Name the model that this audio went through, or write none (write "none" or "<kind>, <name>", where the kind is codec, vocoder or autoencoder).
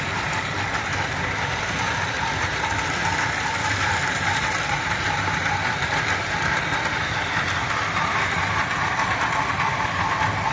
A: vocoder, BigVGAN v2